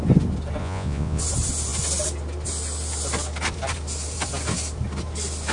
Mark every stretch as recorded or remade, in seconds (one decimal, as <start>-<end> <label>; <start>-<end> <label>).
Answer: 0.0-0.6 recorded; 0.6-1.2 remade; 1.2-5.5 recorded